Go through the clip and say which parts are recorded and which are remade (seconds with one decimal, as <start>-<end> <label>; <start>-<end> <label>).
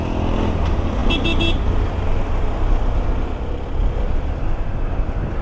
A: 0.0-5.4 recorded